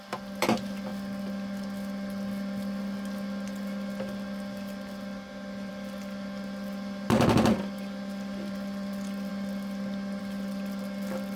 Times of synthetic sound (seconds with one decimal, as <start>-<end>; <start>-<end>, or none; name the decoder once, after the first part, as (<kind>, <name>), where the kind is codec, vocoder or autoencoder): 0.0-0.9 (vocoder, BigVGAN v2); 5.7-9.3; 10.2-11.4